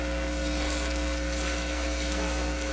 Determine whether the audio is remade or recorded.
remade